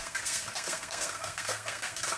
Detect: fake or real fake